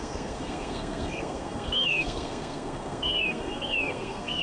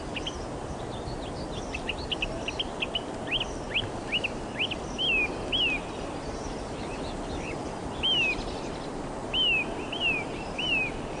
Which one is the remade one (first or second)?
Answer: first